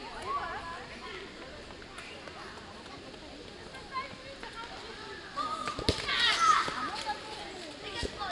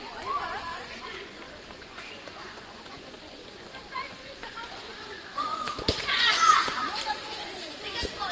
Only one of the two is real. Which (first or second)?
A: first